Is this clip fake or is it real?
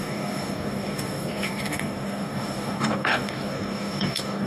fake